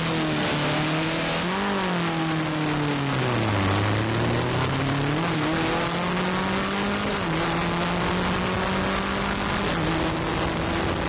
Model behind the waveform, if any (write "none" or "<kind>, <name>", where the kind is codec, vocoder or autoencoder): none